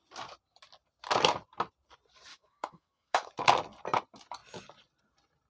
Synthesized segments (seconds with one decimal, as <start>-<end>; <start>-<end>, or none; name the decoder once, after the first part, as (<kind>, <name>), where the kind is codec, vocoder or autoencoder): 2.3-3.3 (autoencoder, DAC-VAE)